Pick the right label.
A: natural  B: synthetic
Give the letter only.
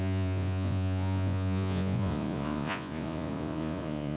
B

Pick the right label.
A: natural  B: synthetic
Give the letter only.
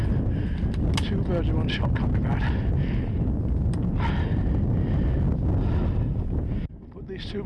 A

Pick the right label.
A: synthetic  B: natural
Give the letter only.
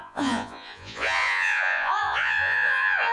A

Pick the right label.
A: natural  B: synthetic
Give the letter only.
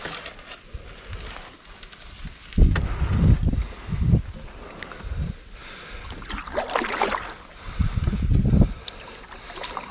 A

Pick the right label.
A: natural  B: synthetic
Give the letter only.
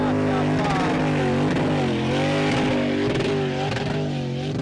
A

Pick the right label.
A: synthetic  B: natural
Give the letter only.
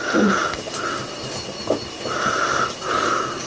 B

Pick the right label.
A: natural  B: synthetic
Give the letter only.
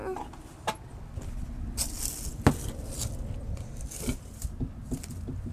A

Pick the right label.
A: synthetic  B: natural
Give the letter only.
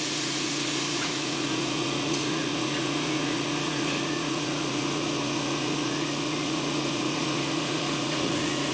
A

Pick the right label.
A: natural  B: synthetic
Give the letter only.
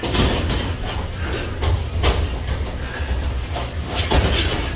A